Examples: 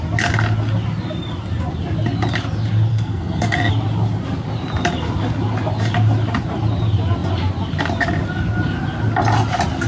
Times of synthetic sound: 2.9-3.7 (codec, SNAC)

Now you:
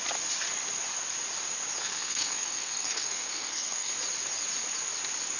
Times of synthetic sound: 1.8-3.9 (codec, SNAC)

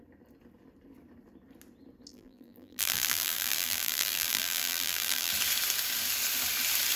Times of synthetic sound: 2.1-5.3 (vocoder, BigVGAN v2)

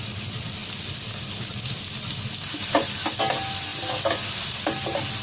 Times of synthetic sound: none

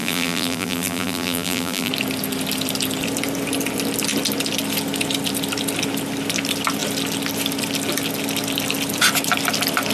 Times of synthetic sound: 0.0-1.9 (vocoder, BigVGAN v2)

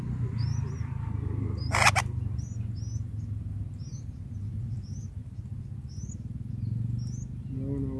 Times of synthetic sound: none

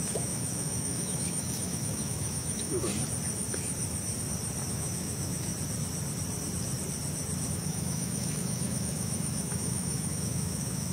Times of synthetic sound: 0.0-2.9 (autoencoder, DAC-VAE); 4.7-5.5; 7.5-10.9

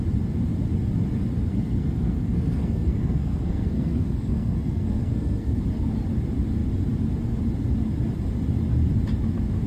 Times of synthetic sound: 1.5-5.6 (codec, SNAC)